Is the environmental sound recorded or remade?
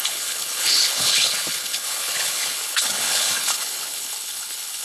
remade